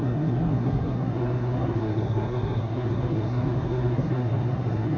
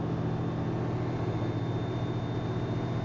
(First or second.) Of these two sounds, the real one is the second